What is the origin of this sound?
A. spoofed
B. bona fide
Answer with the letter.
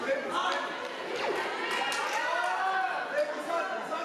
B